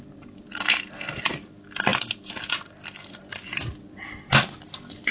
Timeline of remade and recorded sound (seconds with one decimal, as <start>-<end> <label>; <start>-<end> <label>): 0.0-5.1 recorded

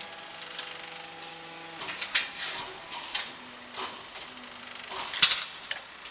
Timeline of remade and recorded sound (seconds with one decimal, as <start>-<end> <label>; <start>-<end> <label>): 0.0-6.1 recorded

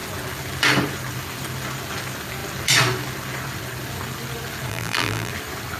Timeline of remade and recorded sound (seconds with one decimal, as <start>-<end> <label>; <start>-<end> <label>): 0.0-4.7 recorded; 4.7-5.3 remade; 5.3-5.8 recorded

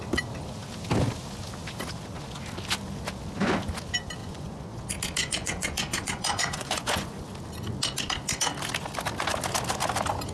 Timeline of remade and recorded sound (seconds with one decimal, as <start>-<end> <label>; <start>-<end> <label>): 0.0-4.2 recorded; 4.2-4.8 remade; 4.8-5.2 recorded; 5.2-7.2 remade; 7.2-10.3 recorded

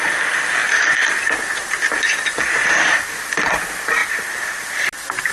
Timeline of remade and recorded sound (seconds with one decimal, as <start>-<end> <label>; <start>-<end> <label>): 0.0-4.0 remade; 4.0-4.6 recorded; 4.6-5.3 remade

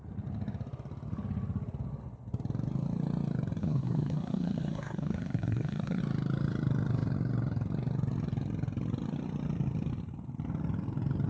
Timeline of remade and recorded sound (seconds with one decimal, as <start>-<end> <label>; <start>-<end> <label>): 0.0-3.6 recorded; 3.6-6.0 remade; 6.0-11.3 recorded

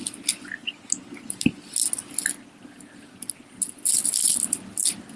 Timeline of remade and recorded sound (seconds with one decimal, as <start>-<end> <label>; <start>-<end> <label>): 0.0-5.2 recorded

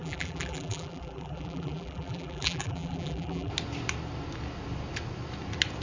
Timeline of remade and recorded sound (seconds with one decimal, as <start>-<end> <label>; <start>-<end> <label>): 0.0-3.5 remade; 3.5-5.8 recorded